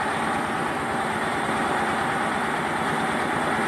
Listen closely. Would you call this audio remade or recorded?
recorded